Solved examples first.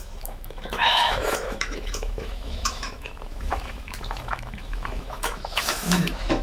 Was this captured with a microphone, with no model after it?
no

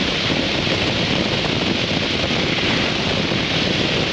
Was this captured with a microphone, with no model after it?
yes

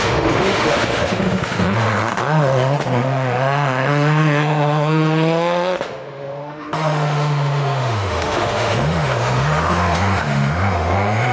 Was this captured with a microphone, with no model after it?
no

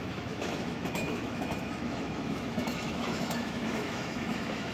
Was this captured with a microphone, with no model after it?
no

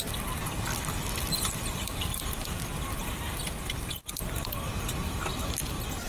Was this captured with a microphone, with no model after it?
yes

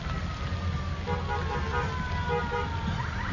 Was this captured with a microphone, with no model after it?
yes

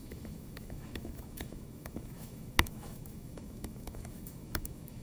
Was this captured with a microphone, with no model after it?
no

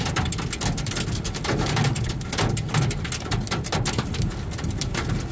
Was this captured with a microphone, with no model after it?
yes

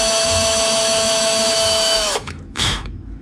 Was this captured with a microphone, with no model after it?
no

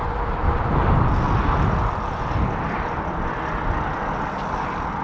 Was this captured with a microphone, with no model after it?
yes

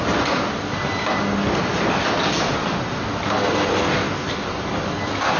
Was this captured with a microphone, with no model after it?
yes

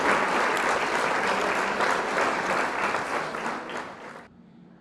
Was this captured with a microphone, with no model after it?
yes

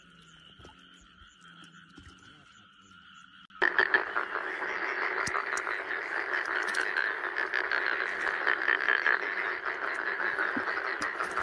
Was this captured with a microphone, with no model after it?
yes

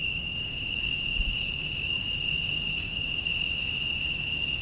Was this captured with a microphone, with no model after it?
no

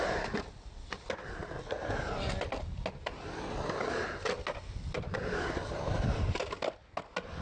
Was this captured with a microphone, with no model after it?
yes